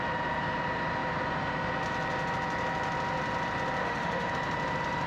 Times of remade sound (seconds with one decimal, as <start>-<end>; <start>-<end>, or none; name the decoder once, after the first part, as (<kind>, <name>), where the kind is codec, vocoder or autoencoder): 3.8-4.3 (autoencoder, DAC-VAE)